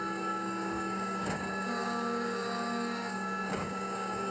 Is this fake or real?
fake